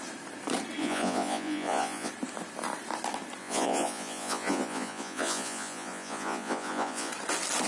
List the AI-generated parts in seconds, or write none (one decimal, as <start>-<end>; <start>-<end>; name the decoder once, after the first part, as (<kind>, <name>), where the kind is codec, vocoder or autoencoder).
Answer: 0.8-2.1 (vocoder, Vocos); 3.4-7.1